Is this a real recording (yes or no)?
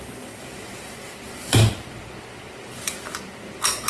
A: no